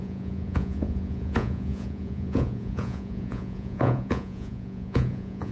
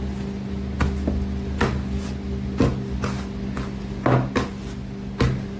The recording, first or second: second